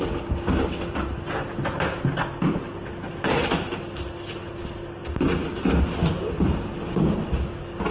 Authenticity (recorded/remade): recorded